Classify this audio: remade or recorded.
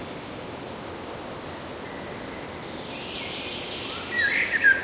recorded